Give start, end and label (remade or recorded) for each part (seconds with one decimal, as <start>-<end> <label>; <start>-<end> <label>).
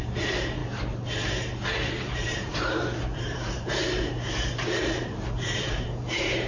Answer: 0.0-0.6 remade; 0.6-2.0 recorded; 2.0-3.8 remade; 3.8-4.5 recorded; 4.5-6.5 remade